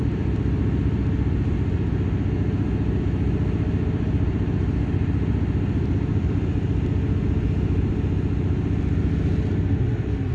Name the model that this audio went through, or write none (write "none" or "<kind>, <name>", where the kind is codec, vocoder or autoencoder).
none